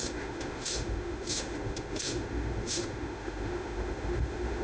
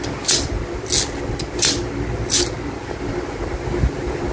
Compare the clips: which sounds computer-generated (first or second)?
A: first